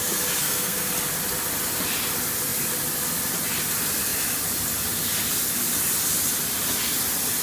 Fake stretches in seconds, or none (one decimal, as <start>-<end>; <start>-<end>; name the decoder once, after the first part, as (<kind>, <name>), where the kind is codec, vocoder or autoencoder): 0.4-0.9 (codec, SNAC)